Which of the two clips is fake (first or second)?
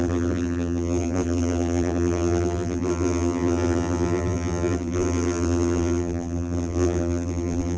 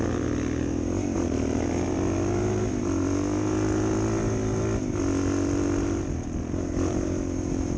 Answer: first